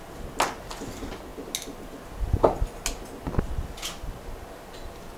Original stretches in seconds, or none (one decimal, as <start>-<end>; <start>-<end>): 0.0-5.2